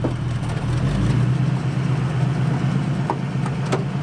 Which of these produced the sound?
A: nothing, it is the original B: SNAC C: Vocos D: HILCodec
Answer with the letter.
A